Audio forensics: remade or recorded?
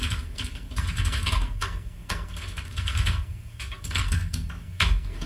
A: remade